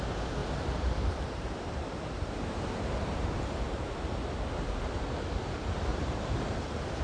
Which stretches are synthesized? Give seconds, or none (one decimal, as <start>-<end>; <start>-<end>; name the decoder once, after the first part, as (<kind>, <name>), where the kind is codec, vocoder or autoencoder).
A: 0.4-3.9 (vocoder, BigVGAN v2); 5.9-7.0

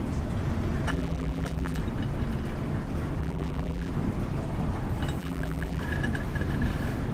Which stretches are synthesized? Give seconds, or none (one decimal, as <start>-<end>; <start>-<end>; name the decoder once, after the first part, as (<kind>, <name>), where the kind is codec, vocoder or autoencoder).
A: 0.9-1.8 (vocoder, BigVGAN v2); 3.2-3.9; 5.2-5.8

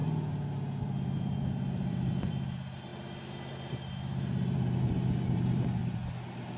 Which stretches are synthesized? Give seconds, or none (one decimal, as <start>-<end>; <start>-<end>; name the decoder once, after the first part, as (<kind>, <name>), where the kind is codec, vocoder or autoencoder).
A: 0.8-2.9 (vocoder, BigVGAN v2); 3.7-5.8

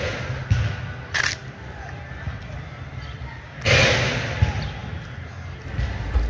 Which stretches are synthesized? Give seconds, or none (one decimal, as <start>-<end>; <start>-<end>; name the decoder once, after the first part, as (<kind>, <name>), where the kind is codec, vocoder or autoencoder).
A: none

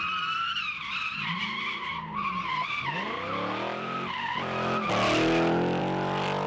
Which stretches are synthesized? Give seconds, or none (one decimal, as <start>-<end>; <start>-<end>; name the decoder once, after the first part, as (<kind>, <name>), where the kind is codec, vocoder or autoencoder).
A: 0.0-1.9 (vocoder, BigVGAN v2); 5.8-6.5

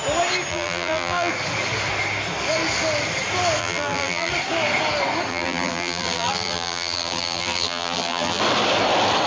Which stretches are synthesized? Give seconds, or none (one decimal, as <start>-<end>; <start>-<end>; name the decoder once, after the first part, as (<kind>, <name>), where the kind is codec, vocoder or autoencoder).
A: 0.5-1.3 (vocoder, BigVGAN v2); 3.6-4.3; 5.3-8.4

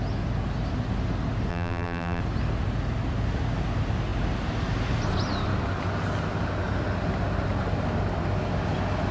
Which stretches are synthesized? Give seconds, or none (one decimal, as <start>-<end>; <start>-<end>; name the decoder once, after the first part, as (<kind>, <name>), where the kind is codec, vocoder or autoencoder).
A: 1.5-2.2 (vocoder, BigVGAN v2)

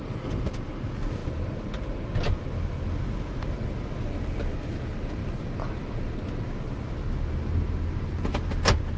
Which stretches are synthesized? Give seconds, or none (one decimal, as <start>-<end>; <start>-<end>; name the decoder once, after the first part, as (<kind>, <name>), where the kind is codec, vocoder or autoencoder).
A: none